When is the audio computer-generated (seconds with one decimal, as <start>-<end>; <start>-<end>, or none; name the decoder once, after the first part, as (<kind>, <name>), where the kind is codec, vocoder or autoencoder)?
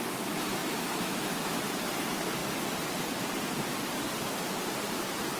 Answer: 0.6-1.6 (autoencoder, DAC-VAE)